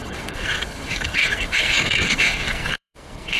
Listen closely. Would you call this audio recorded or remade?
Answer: remade